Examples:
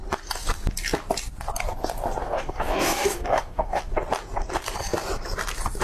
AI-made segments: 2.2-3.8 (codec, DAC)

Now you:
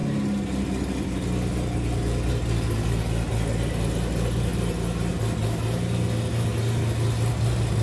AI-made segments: none